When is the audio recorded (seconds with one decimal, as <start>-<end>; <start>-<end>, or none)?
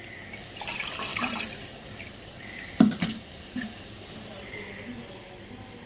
0.0-1.1; 4.6-5.9